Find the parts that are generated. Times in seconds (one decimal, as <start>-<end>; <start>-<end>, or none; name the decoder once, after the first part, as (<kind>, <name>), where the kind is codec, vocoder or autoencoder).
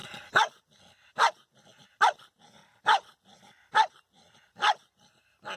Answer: none